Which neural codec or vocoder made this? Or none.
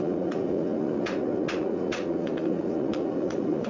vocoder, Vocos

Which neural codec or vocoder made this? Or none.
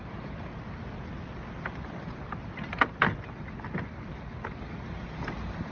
none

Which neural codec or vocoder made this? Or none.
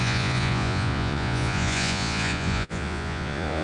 vocoder, Vocos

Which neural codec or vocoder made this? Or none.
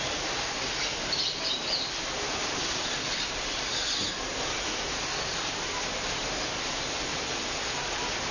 none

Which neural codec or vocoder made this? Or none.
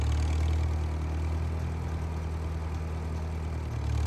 none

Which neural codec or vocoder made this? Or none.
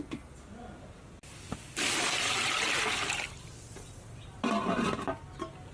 none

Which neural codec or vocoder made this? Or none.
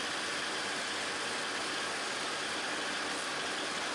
none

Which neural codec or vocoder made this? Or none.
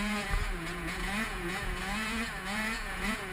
vocoder, Vocos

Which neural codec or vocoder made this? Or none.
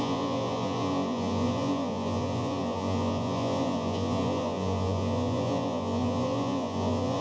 vocoder, Vocos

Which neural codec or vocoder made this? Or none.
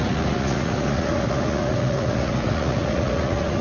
vocoder, Vocos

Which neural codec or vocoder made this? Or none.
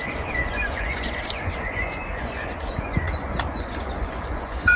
vocoder, Vocos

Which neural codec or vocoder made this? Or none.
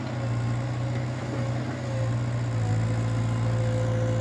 none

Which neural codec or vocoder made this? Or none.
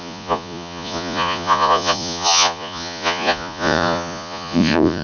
vocoder, Vocos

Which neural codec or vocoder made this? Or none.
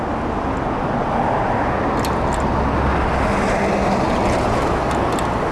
none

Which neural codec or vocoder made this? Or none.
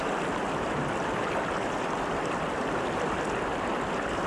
none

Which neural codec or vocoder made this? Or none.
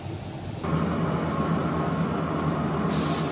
none